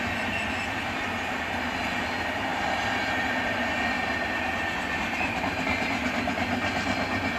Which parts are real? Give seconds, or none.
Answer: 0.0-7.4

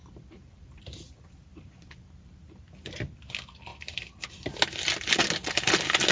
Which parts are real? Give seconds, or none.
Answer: 2.9-3.7; 4.6-6.1

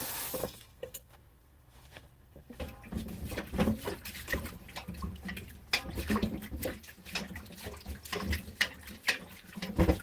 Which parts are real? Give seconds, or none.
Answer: 0.0-0.4; 2.6-10.0